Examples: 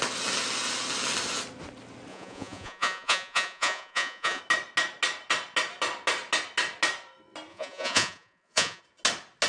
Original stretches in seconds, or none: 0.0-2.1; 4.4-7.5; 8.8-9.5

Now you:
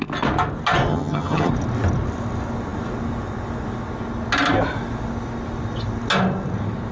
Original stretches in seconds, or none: 0.0-0.9; 1.5-6.9

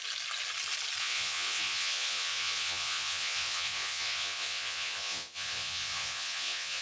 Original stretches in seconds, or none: 0.0-1.0

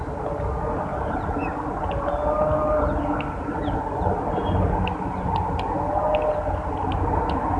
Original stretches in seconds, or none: 0.0-7.6

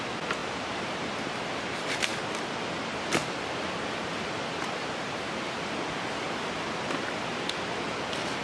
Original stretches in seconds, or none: 0.0-0.4; 1.1-8.4

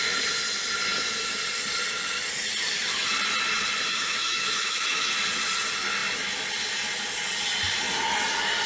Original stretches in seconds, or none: 0.0-3.9; 5.1-8.7

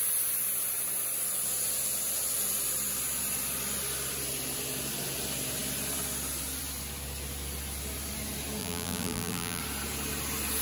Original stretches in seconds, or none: 0.0-8.6; 9.6-10.6

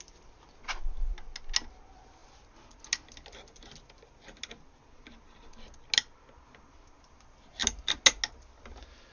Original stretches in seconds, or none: 0.0-9.1